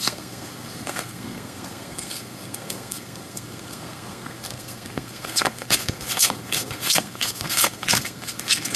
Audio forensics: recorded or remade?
remade